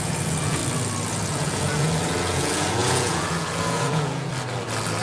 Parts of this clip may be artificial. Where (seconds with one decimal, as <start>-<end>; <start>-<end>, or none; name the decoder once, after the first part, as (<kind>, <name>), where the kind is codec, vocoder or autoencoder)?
0.0-0.6 (vocoder, Vocos); 1.1-4.3

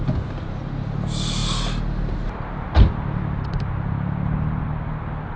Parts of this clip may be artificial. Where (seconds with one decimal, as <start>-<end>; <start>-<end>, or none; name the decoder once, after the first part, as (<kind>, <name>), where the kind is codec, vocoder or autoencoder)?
none

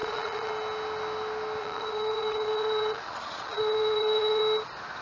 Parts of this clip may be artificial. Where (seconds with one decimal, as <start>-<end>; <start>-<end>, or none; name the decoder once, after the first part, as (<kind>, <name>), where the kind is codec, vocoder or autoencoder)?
0.0-0.5 (vocoder, Vocos); 1.6-4.4

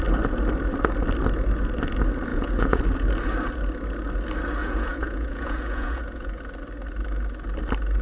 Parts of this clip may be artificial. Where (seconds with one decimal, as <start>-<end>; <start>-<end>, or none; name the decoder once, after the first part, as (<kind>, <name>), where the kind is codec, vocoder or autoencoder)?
2.3-2.8 (vocoder, Vocos); 4.6-6.4

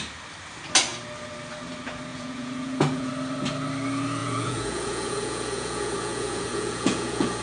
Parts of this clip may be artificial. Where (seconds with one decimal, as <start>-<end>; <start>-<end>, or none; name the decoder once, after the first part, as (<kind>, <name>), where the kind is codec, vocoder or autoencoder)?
2.1-3.1 (vocoder, Vocos); 4.2-7.4

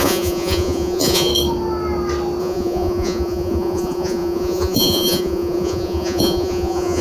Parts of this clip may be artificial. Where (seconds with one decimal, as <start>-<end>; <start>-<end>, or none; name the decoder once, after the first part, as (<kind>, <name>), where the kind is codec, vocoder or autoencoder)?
0.0-1.3 (vocoder, Vocos); 2.4-7.0

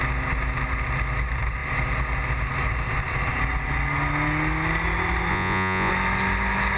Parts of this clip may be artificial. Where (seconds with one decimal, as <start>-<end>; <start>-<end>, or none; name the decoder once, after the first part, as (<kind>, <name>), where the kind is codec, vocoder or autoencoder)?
5.3-5.9 (vocoder, Vocos)